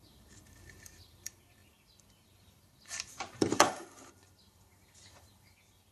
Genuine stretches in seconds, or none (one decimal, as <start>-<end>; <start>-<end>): none